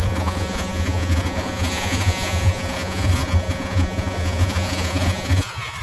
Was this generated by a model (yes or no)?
yes